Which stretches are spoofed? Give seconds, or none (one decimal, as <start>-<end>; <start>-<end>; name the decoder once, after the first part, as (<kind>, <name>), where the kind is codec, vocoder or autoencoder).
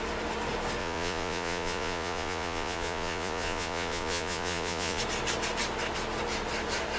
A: 0.8-5.0 (vocoder, Vocos)